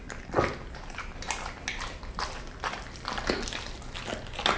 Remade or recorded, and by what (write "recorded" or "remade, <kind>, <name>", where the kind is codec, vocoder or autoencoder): recorded